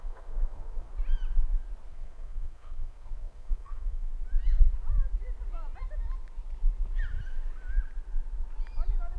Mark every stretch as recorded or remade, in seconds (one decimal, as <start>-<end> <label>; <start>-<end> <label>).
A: 0.0-0.9 remade; 0.9-1.9 recorded; 1.9-4.1 remade; 4.1-9.2 recorded